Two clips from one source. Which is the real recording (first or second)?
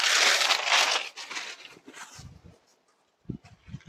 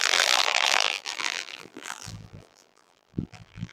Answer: first